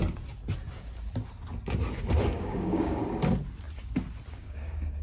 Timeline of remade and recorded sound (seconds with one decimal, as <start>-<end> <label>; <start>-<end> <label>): 0.0-2.2 recorded; 2.2-3.0 remade; 3.0-4.3 recorded; 4.3-5.0 remade